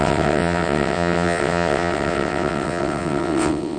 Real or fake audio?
fake